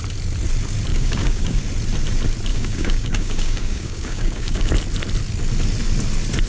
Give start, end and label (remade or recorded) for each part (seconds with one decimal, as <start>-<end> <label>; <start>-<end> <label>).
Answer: 0.0-0.9 recorded; 0.9-1.6 remade; 1.6-2.5 recorded; 2.5-4.7 remade; 4.7-6.5 recorded